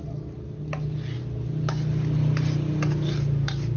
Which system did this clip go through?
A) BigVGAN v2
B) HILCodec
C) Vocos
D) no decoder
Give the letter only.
D